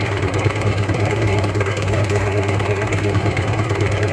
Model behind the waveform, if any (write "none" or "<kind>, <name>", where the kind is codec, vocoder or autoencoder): codec, SNAC